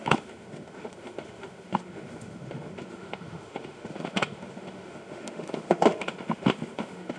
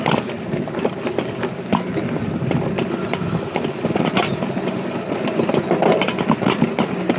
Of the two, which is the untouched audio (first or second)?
second